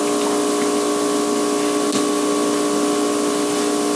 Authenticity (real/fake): real